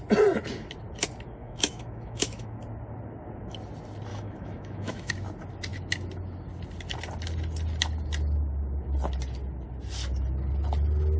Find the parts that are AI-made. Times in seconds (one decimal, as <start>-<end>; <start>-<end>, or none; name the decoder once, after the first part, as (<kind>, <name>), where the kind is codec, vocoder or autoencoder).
1.4-2.6 (autoencoder, DAC-VAE); 4.1-5.1